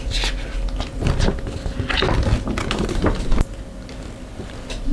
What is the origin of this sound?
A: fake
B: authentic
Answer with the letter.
B